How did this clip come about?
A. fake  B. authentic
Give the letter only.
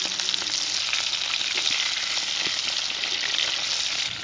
B